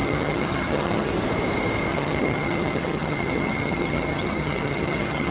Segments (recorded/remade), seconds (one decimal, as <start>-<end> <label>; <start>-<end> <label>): 0.0-1.1 remade; 1.1-1.9 recorded; 1.9-5.3 remade